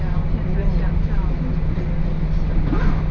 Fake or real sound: real